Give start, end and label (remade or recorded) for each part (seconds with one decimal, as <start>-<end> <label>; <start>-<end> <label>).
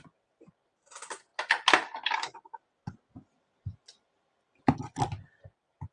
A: 0.0-5.9 recorded